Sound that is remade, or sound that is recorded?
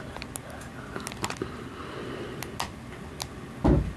recorded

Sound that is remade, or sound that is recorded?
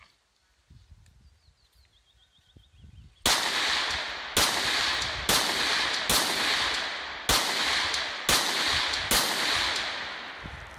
recorded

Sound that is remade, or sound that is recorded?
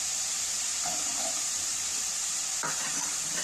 remade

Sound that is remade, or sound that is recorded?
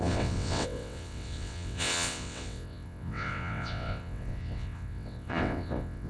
remade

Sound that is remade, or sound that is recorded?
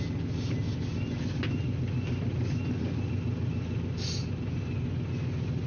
recorded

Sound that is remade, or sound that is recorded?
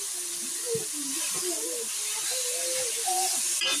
recorded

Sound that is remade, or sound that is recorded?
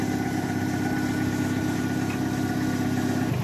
recorded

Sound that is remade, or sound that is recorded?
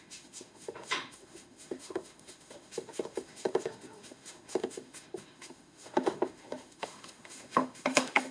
remade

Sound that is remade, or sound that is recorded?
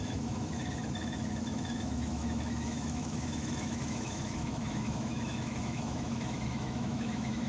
remade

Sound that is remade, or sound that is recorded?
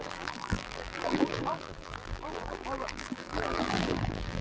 remade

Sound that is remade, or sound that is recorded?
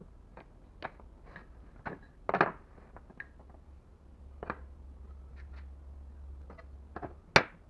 recorded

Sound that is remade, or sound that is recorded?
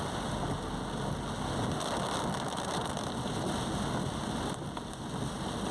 recorded